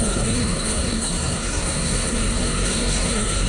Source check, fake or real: fake